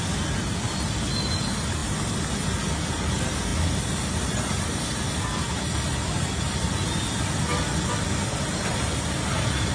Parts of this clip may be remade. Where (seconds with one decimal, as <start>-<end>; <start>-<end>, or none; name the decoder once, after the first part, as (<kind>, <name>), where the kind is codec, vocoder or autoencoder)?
none